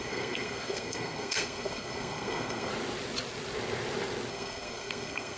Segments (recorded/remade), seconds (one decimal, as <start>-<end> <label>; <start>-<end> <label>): 0.0-2.7 remade; 2.7-4.3 recorded; 4.3-5.4 remade

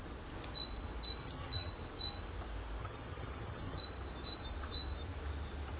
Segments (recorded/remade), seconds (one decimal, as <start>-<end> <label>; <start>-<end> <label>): 0.0-1.2 recorded; 1.2-1.7 remade; 1.7-2.8 recorded; 2.8-3.8 remade; 3.8-5.8 recorded

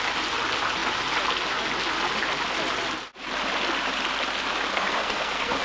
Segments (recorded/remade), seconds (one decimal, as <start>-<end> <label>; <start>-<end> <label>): 0.0-4.7 recorded; 4.7-5.6 remade